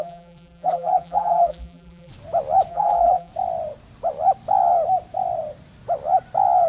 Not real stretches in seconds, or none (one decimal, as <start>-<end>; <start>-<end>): 0.0-2.1; 2.7-3.3